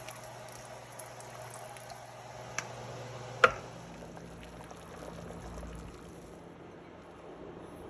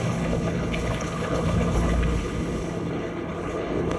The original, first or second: first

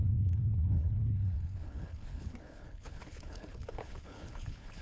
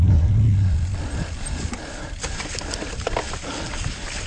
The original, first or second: second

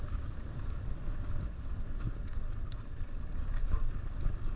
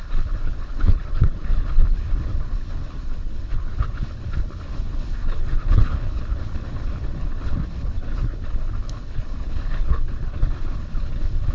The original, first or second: first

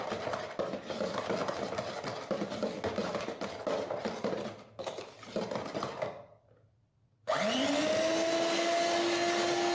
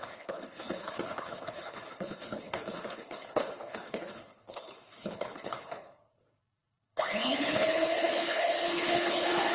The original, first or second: first